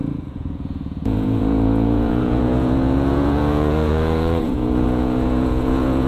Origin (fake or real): fake